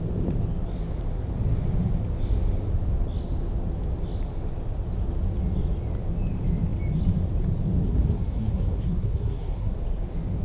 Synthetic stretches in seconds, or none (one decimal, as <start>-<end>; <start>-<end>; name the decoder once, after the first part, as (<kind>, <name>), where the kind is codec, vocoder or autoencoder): 7.9-9.7 (codec, SNAC)